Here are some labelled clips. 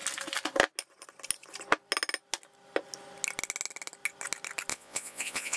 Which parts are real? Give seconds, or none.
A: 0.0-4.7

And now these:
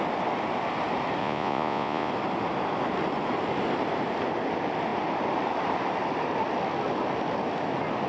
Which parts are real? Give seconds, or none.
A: 0.0-1.2; 2.1-8.1

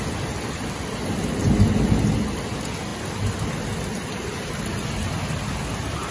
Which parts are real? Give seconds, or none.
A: 0.0-6.1

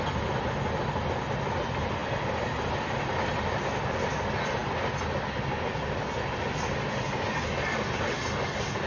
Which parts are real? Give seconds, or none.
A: 0.0-8.9

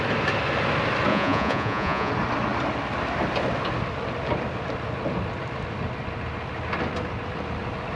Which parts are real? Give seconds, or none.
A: 0.0-1.1; 2.1-8.0

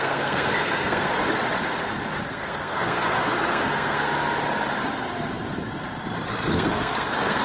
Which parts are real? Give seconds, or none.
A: 1.2-2.3; 4.1-6.5

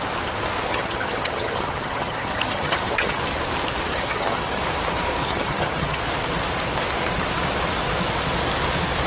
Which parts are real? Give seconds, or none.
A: 0.0-0.7; 3.2-3.9; 4.6-5.2; 6.0-9.1